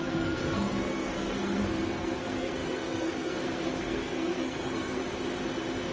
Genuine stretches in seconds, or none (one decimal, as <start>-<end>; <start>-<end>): 5.0-5.9